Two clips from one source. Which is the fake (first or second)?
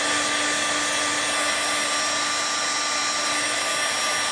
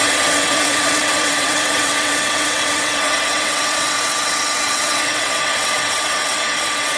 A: second